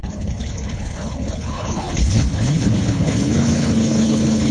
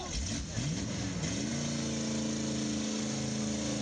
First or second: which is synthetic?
first